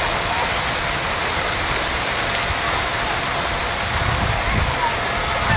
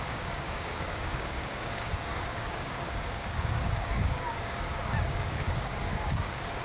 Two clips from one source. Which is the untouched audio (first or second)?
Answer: first